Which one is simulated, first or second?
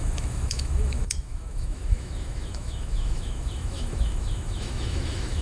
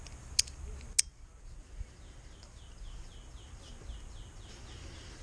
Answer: first